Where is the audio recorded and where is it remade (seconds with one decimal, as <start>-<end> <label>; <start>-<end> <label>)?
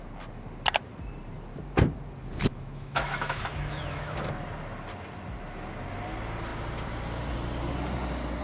0.0-2.5 recorded; 2.5-4.3 remade; 4.3-8.4 recorded